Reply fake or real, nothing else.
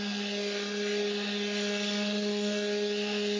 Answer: real